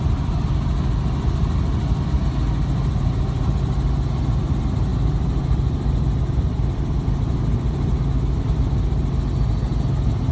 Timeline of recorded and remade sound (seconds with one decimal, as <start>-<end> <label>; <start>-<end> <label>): 0.0-4.9 recorded; 4.9-8.8 remade; 8.8-10.3 recorded